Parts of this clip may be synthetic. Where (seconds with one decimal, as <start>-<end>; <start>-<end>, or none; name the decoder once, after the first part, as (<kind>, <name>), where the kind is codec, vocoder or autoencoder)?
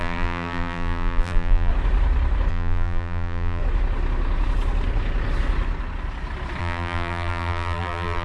0.0-1.7 (vocoder, BigVGAN v2); 2.5-3.6; 6.6-8.2